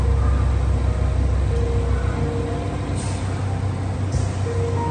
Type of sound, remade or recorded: recorded